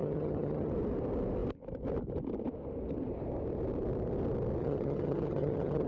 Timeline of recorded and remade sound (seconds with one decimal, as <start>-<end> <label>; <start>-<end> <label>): 0.0-0.7 remade; 0.7-4.6 recorded; 4.6-5.9 remade